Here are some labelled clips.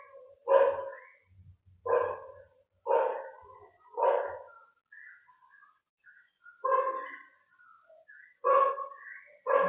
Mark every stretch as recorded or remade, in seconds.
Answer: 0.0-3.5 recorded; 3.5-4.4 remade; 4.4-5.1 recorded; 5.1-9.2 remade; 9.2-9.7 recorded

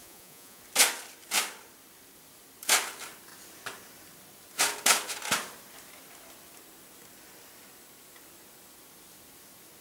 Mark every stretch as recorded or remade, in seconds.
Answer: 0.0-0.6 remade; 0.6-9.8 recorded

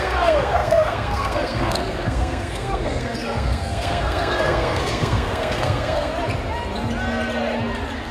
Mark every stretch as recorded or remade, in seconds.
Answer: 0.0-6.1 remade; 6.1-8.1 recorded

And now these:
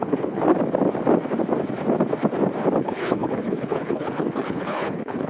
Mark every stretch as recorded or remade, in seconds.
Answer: 0.0-0.4 remade; 0.4-2.8 recorded; 2.8-5.3 remade

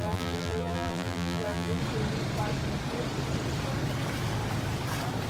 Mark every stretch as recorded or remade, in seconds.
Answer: 0.0-1.8 remade; 1.8-5.3 recorded

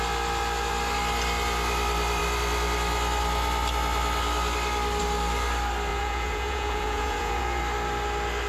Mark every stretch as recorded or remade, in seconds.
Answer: 0.0-5.9 recorded; 5.9-7.6 remade; 7.6-8.5 recorded